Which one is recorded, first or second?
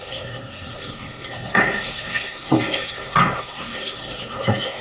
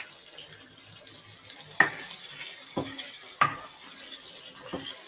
second